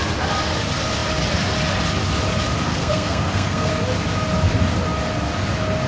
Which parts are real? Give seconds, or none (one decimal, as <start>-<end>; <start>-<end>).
0.0-2.7; 3.7-5.9